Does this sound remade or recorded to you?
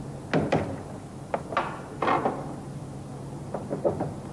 recorded